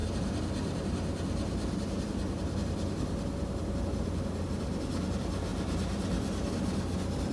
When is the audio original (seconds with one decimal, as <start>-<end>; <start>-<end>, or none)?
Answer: 0.0-5.5; 6.5-7.3